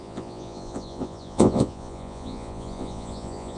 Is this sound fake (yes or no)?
yes